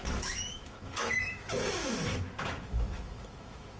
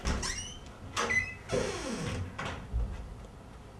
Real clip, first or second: second